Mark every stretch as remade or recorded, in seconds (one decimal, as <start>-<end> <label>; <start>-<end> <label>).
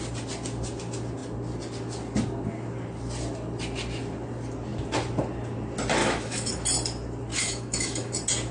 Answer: 0.0-6.0 recorded; 6.0-6.5 remade; 6.5-7.3 recorded; 7.3-8.1 remade; 8.1-8.5 recorded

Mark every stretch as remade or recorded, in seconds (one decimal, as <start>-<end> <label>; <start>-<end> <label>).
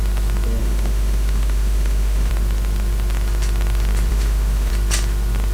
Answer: 0.0-0.6 recorded; 0.6-2.3 remade; 2.3-4.1 recorded; 4.1-4.7 remade; 4.7-5.5 recorded